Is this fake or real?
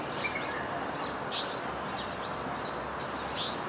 real